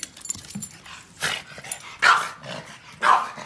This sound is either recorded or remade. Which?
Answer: recorded